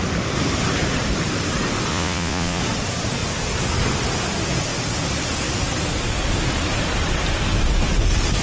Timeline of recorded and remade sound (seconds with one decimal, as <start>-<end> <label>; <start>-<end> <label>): 0.0-1.9 recorded; 1.9-2.6 remade; 2.6-8.4 recorded